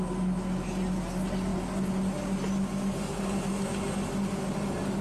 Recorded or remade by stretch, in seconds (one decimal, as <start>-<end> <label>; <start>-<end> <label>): 0.0-5.0 recorded